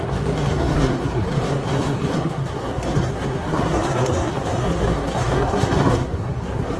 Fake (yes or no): yes